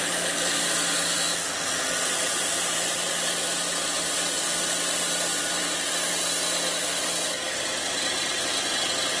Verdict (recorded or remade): recorded